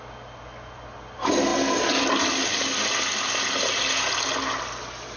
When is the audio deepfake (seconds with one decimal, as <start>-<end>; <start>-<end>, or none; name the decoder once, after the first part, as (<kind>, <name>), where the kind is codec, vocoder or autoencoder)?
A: none